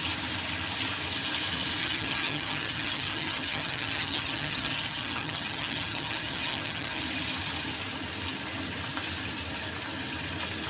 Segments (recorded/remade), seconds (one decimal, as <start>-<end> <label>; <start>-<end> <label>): 0.0-1.8 recorded; 1.8-7.0 remade; 7.0-10.7 recorded